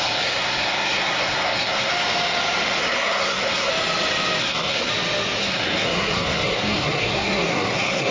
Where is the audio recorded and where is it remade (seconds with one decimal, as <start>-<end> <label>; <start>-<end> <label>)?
0.0-1.9 remade; 1.9-2.8 recorded; 2.8-3.7 remade; 3.7-4.4 recorded; 4.4-4.9 remade; 4.9-5.4 recorded; 5.4-8.1 remade